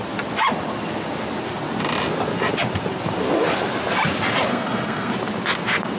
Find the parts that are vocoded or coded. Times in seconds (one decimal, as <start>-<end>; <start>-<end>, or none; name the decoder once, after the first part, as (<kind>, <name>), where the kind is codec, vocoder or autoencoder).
4.5-5.1 (codec, SNAC)